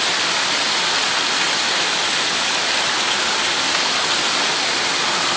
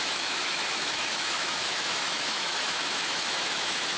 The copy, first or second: second